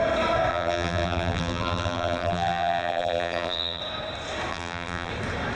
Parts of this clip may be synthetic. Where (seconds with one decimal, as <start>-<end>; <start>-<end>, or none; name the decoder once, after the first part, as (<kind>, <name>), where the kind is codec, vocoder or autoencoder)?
0.5-3.8 (vocoder, BigVGAN v2); 4.5-5.1